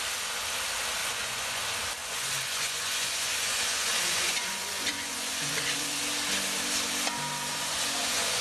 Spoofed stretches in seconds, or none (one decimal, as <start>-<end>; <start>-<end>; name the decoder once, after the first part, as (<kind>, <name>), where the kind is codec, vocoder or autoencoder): 1.0-1.6 (vocoder, Vocos); 2.0-6.0; 7.5-8.4